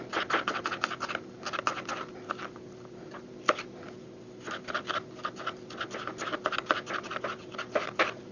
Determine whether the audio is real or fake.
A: real